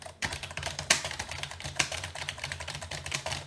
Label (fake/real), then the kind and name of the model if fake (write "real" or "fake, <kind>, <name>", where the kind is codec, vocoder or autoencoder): fake, vocoder, BigVGAN v2